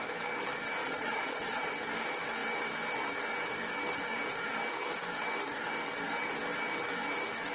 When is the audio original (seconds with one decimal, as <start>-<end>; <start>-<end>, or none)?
0.0-0.8; 1.7-7.5